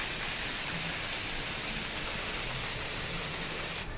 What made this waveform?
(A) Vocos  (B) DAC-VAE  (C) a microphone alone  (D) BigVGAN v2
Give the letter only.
D